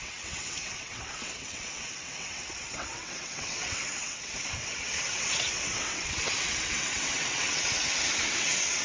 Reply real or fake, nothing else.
fake